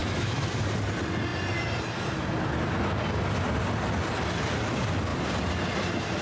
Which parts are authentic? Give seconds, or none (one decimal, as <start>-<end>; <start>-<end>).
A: 0.5-6.2